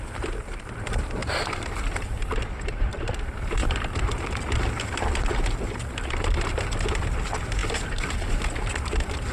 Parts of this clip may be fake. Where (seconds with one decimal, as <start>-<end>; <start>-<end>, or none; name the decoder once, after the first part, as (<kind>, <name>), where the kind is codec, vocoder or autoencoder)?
1.2-2.9 (vocoder, BigVGAN v2)